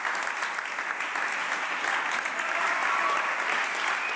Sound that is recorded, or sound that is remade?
recorded